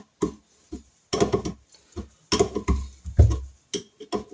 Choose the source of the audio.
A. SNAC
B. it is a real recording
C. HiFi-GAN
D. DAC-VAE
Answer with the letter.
B